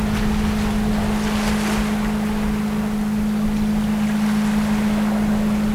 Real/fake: real